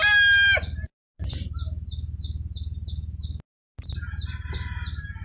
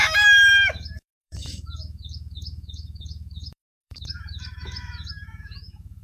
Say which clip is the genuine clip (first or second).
first